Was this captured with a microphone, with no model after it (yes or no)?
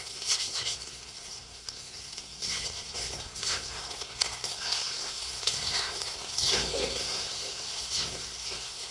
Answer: no